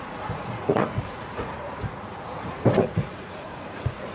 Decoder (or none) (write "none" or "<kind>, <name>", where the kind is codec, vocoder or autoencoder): vocoder, Vocos